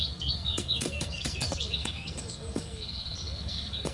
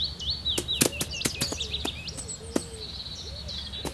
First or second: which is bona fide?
second